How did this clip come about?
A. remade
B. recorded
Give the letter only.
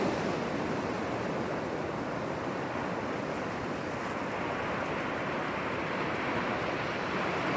B